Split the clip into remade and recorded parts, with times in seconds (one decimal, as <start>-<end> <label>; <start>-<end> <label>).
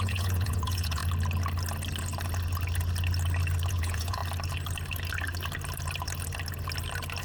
0.0-1.0 remade; 1.0-3.7 recorded; 3.7-4.2 remade; 4.2-7.2 recorded